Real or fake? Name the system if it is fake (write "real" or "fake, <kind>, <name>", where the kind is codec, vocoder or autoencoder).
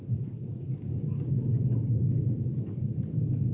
fake, codec, DAC